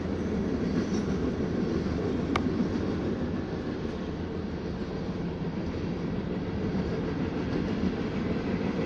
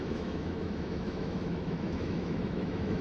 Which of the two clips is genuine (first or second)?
first